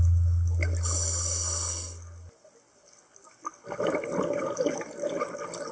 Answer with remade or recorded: recorded